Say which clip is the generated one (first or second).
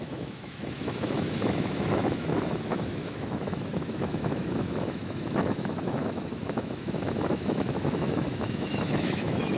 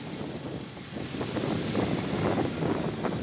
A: first